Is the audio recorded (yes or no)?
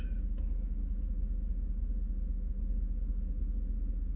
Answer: yes